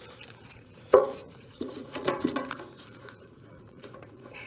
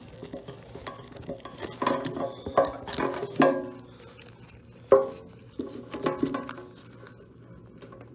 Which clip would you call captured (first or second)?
second